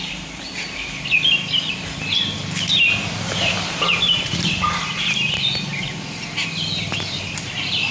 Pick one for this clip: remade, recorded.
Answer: recorded